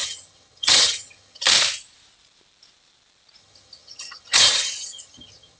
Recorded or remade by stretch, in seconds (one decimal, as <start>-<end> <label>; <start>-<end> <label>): 0.0-1.4 remade; 1.4-3.4 recorded; 3.4-5.6 remade